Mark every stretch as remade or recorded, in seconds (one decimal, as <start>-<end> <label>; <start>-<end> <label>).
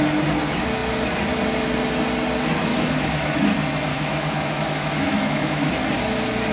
0.0-2.7 recorded; 2.7-3.4 remade; 3.4-3.9 recorded; 3.9-5.7 remade; 5.7-6.5 recorded